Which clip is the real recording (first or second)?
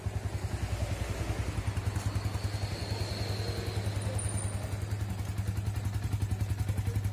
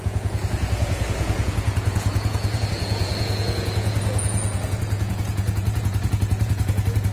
first